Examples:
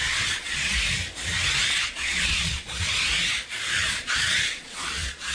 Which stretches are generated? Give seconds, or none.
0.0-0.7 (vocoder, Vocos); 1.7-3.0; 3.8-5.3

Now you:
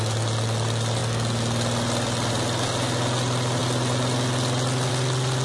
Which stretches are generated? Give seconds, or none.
none